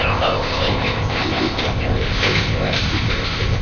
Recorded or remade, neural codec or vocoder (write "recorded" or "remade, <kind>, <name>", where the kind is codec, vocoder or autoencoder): remade, codec, ZipCodec